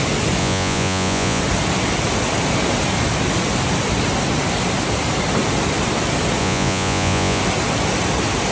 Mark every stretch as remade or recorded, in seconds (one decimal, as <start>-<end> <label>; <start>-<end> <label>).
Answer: 0.0-0.4 recorded; 0.4-1.4 remade; 1.4-6.4 recorded; 6.4-7.4 remade; 7.4-8.5 recorded